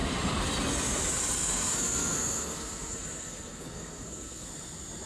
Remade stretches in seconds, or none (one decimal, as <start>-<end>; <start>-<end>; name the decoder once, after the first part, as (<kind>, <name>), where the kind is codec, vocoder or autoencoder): 1.4-4.5 (codec, SNAC)